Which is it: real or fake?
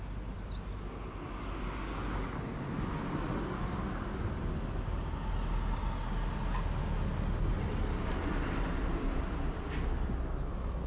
real